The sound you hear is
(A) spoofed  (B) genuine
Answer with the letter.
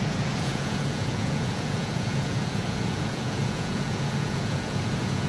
A